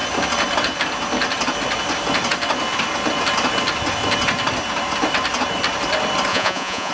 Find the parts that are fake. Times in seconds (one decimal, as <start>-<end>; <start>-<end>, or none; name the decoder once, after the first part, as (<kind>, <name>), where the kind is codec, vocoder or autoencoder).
6.3-6.9 (vocoder, Vocos)